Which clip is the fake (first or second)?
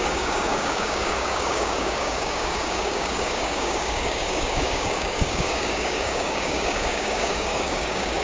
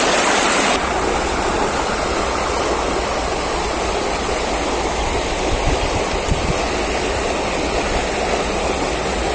first